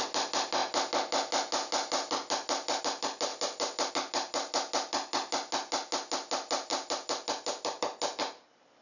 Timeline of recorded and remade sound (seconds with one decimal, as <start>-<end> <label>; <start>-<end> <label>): 0.0-8.8 recorded